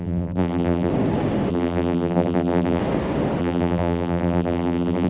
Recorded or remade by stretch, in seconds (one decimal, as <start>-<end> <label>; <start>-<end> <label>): 0.0-0.9 remade; 0.9-1.5 recorded; 1.5-2.8 remade; 2.8-3.4 recorded; 3.4-5.1 remade